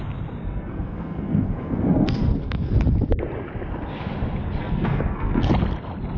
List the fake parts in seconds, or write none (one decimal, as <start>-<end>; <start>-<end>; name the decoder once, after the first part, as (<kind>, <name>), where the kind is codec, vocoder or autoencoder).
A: 0.4-2.7 (codec, SNAC); 4.6-5.5